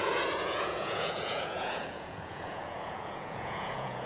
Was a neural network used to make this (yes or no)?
yes